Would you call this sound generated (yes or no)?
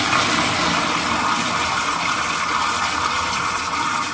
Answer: no